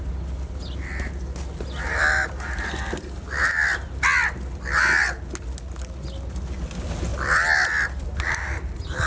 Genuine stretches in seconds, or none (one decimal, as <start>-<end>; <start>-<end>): 0.0-9.1